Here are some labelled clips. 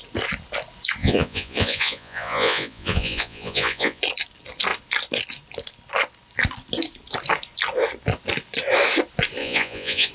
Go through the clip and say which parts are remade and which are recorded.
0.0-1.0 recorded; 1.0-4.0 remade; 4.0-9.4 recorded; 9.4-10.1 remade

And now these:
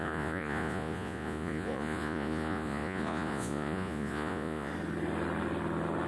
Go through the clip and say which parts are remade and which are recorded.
0.0-4.7 remade; 4.7-6.1 recorded